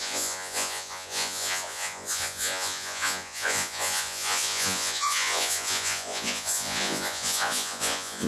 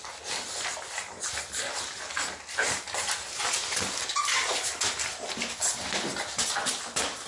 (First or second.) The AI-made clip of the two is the first